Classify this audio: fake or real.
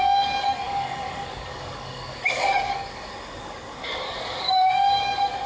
fake